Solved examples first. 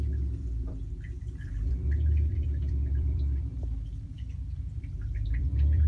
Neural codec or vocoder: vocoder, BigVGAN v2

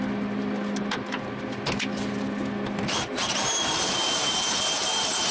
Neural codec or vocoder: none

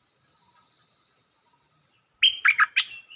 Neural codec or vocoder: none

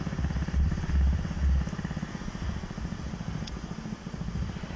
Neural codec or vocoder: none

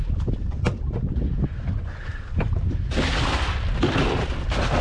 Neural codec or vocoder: none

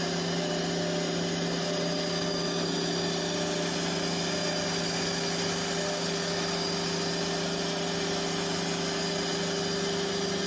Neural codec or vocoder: none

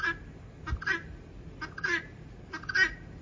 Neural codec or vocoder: none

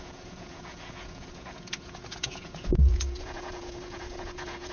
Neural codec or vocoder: vocoder, Vocos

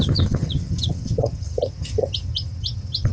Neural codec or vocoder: vocoder, HiFi-GAN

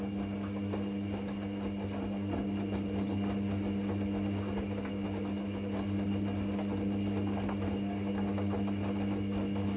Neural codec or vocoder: none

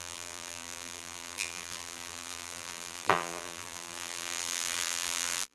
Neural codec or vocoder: vocoder, BigVGAN v2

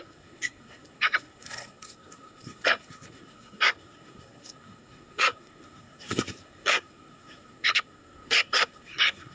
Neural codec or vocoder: codec, SNAC